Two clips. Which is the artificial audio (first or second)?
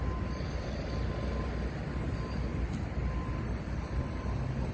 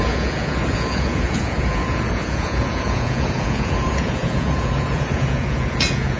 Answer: second